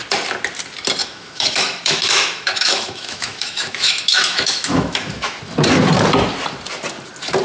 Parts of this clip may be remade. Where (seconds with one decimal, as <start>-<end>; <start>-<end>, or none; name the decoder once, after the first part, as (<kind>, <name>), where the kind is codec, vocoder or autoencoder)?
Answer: 1.0-5.4 (autoencoder, DAC-VAE)